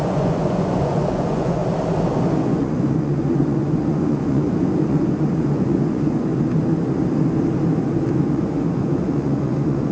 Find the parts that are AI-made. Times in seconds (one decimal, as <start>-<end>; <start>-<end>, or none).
0.0-1.6; 2.4-6.3; 8.1-9.9